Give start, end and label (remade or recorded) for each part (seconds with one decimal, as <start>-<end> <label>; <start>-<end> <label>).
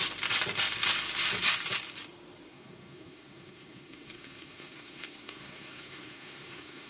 0.0-2.5 recorded; 2.5-6.9 remade